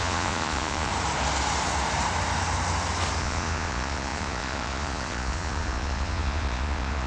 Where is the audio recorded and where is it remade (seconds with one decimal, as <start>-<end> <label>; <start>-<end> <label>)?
0.0-0.9 remade; 0.9-3.2 recorded; 3.2-7.1 remade